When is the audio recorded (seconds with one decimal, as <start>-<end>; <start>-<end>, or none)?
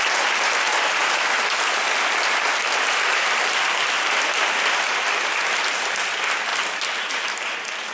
0.0-7.9